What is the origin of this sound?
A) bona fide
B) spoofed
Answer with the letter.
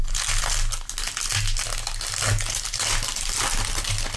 A